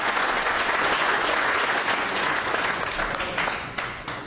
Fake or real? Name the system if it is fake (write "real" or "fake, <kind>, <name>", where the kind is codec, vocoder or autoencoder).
fake, vocoder, Vocos